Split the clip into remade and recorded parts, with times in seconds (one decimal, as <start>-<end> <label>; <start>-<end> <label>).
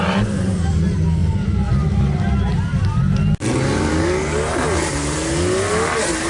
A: 0.0-6.3 recorded